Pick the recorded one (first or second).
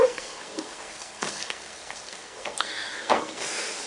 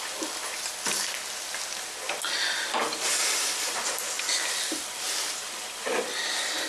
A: second